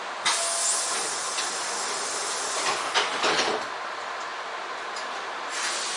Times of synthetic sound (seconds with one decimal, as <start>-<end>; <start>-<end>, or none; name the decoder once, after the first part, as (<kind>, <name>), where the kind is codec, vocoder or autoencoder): none